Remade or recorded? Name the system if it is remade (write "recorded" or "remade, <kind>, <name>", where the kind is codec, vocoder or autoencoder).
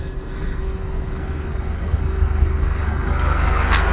remade, codec, SNAC